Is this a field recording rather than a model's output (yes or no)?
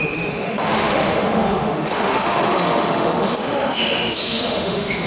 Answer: no